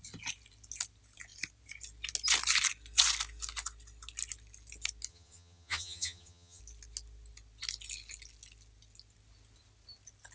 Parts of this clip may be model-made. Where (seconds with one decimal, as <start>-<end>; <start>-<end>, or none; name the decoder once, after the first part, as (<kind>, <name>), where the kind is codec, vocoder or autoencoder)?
5.1-6.6 (vocoder, HiFi-GAN)